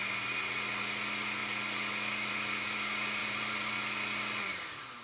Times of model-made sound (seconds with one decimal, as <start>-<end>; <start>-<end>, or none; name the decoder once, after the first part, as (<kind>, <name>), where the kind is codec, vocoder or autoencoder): 3.2-3.7 (vocoder, BigVGAN v2)